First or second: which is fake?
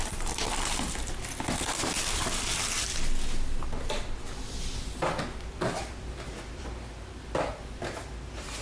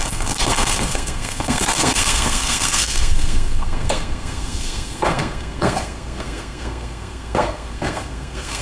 second